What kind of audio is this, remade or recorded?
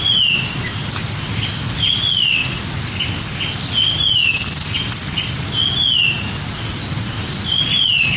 recorded